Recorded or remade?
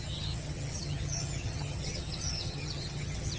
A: remade